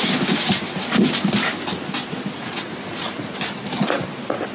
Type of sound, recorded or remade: recorded